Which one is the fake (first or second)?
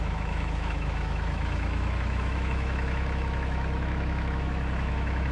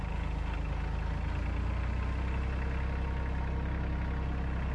first